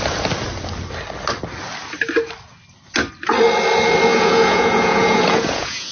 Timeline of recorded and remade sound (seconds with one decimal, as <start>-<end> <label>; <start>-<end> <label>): 0.0-4.1 recorded; 4.1-5.9 remade